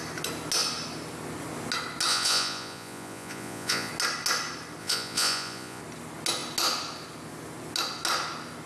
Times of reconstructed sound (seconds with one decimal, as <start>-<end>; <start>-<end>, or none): 2.1-3.9; 4.8-5.8